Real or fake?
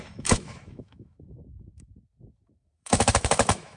fake